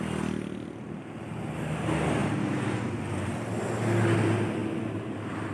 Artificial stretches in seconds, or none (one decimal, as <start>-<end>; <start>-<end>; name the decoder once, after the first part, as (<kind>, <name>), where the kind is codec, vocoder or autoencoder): 4.6-5.5 (vocoder, BigVGAN v2)